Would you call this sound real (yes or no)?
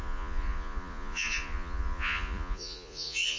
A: no